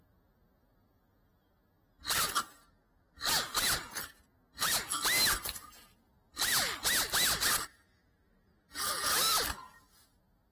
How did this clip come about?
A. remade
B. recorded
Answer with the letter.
B